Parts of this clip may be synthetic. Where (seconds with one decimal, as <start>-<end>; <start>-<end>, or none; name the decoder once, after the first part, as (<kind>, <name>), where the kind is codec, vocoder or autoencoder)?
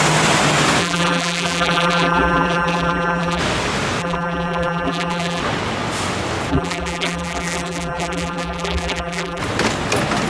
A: 0.8-3.4 (vocoder, BigVGAN v2); 4.0-5.4; 6.5-9.4